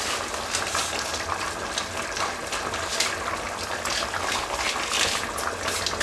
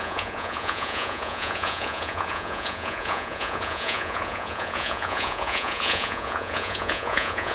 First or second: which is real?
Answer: first